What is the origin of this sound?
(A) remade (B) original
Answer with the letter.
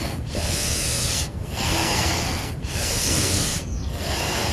A